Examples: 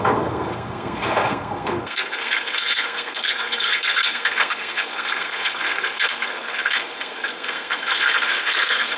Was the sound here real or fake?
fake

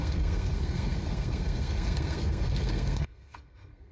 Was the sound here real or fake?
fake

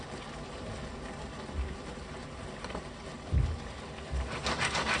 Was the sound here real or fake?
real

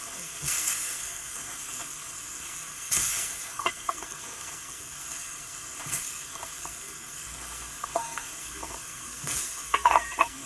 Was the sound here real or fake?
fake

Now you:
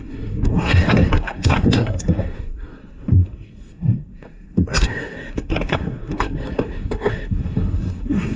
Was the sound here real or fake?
fake